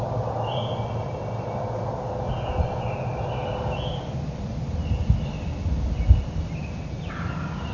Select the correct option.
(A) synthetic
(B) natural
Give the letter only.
B